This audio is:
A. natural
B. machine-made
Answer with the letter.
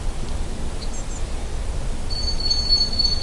A